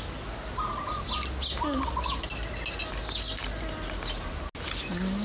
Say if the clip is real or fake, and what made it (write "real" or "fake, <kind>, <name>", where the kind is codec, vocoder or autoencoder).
real